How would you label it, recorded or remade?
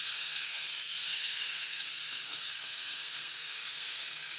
remade